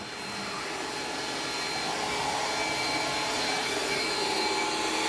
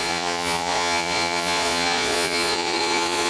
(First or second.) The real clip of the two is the first